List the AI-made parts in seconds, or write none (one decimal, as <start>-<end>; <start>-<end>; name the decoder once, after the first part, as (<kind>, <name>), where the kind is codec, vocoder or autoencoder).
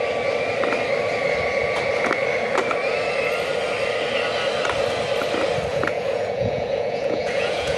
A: 5.7-7.8 (vocoder, Vocos)